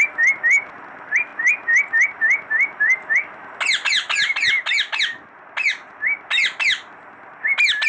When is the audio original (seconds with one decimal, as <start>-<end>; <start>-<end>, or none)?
0.0-7.9